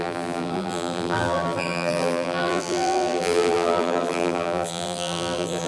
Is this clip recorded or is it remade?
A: remade